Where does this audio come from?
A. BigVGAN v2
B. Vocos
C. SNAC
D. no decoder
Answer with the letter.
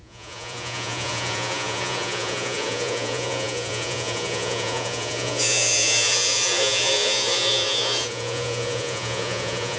B